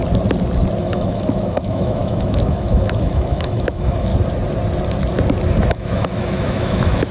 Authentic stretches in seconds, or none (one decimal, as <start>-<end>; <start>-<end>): 0.0-0.8; 4.1-5.7